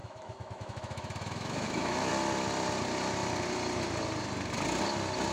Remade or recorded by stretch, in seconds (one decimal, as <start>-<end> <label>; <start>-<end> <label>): 0.0-2.1 remade; 2.1-5.3 recorded